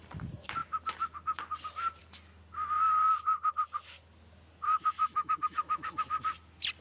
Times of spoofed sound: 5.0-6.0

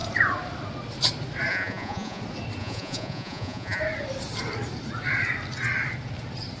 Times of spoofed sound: 1.5-2.2; 2.6-3.8

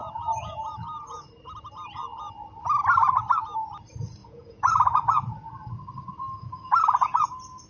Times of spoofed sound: 0.0-0.7; 4.2-5.5; 6.4-7.2

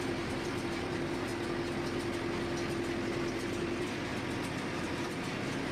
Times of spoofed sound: 0.0-1.3; 3.3-4.1; 4.6-5.7